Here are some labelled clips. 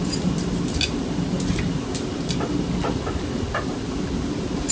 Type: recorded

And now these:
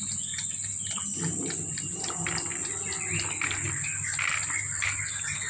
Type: recorded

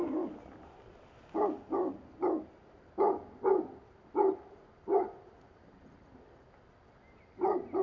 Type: recorded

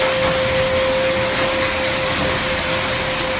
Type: recorded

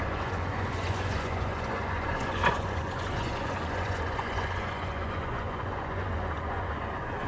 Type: remade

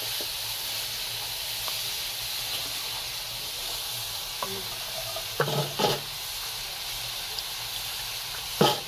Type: recorded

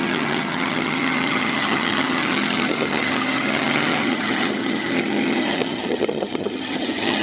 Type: remade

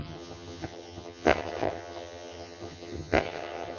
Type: remade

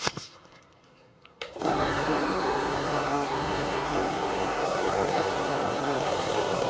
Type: remade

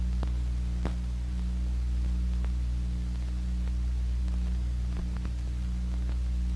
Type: recorded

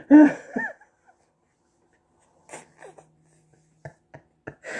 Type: recorded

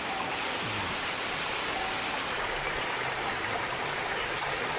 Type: recorded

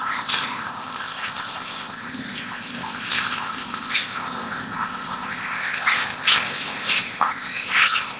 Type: remade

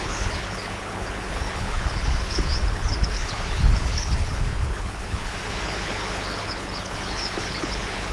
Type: remade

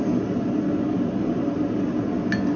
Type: recorded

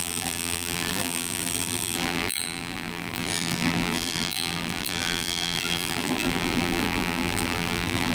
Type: remade